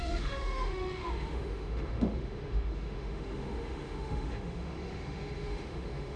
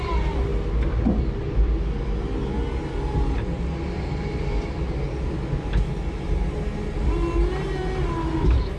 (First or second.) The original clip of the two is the second